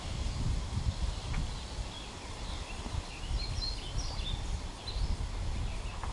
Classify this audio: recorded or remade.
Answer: recorded